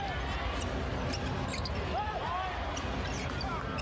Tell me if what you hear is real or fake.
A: real